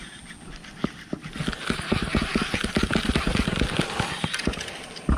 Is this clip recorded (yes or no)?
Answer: yes